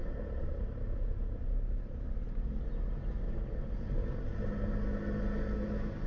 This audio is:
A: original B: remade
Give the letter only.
A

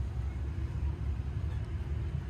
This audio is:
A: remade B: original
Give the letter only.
B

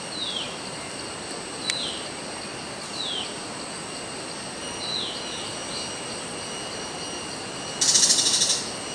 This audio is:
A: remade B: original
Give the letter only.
B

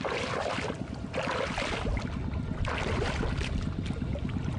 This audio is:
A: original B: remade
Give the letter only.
A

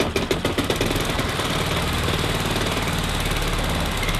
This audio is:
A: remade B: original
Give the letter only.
B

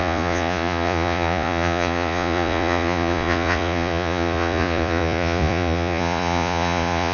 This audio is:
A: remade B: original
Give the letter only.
A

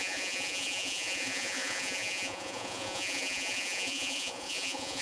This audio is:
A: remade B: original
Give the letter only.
A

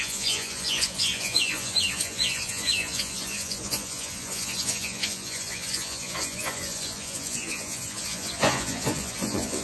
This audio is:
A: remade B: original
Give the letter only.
A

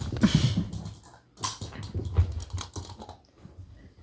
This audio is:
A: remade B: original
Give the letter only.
B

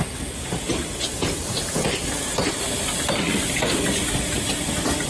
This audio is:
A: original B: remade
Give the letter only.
A